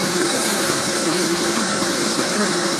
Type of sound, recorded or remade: remade